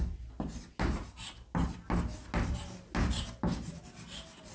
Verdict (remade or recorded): recorded